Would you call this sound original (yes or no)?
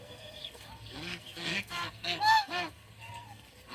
no